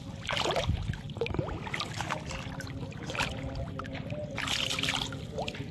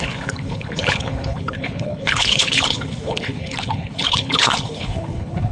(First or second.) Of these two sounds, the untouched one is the first